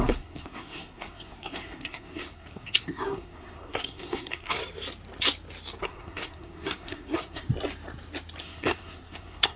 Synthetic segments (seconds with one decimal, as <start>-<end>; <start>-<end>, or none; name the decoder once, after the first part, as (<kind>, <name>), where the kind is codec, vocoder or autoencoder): 0.0-4.6 (codec, SNAC); 5.8-7.5; 8.4-9.6